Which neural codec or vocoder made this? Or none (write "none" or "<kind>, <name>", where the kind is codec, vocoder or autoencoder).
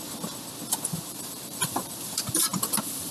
vocoder, BigVGAN v2